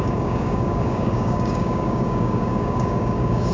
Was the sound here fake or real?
fake